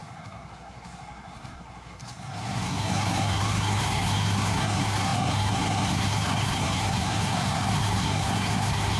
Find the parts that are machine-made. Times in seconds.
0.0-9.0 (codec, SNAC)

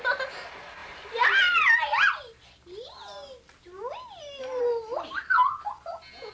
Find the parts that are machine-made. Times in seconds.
none

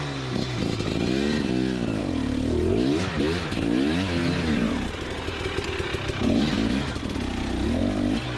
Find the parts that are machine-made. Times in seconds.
none